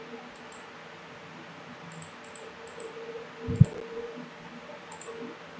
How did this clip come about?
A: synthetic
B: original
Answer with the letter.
B